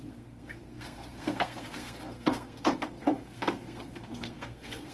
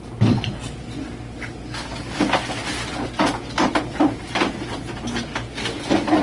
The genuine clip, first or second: second